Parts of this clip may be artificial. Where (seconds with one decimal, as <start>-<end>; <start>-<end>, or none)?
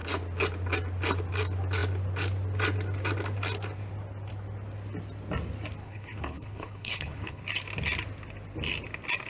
5.8-7.4